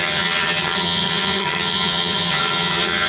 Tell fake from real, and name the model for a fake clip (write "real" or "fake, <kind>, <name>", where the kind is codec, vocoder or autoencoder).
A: fake, vocoder, HiFi-GAN